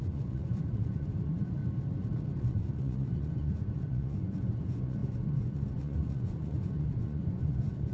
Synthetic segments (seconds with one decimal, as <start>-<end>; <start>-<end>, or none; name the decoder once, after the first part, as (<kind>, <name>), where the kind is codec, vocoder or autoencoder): 0.0-1.6 (vocoder, Vocos); 2.4-7.9